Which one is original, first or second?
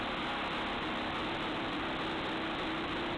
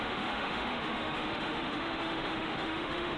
first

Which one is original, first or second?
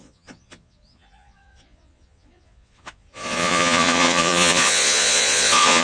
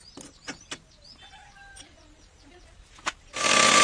second